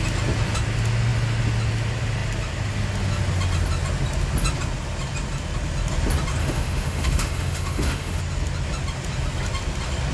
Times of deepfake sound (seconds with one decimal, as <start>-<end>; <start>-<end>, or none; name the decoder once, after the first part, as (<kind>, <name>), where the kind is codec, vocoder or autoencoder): 6.4-8.2 (autoencoder, DAC-VAE)